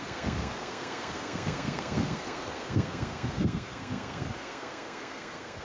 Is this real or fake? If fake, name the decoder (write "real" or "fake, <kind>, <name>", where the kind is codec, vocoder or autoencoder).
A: fake, codec, SNAC